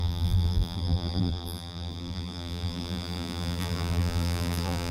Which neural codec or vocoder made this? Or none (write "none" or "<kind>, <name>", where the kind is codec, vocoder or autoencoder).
vocoder, BigVGAN v2